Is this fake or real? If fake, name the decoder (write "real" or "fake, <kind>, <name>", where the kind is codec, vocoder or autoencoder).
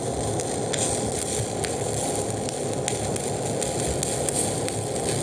real